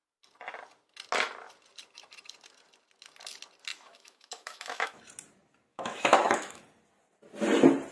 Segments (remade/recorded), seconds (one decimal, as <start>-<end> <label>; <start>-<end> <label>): 0.0-3.7 recorded; 3.7-5.0 remade; 5.0-5.7 recorded; 5.7-6.6 remade; 6.6-7.9 recorded